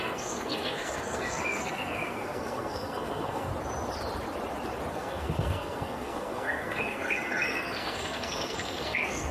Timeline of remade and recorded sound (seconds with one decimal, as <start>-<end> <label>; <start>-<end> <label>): 0.0-3.5 remade; 3.5-4.9 recorded; 4.9-9.3 remade